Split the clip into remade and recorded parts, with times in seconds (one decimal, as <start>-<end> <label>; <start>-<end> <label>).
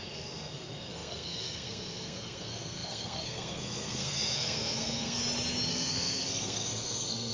0.0-5.2 remade; 5.2-5.7 recorded; 5.7-7.3 remade